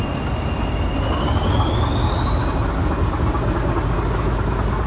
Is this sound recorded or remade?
recorded